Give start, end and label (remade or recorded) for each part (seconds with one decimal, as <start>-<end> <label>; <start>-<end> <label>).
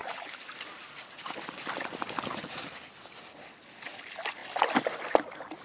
0.0-5.6 recorded